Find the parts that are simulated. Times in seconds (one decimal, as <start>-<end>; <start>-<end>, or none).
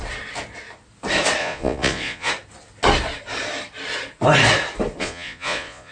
1.4-2.3; 5.0-5.9